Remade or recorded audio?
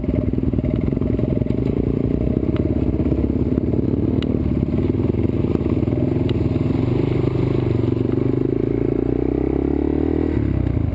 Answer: recorded